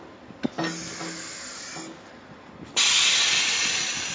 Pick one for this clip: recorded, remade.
recorded